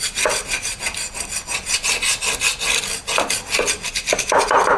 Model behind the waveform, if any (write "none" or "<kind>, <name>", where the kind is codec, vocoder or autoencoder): none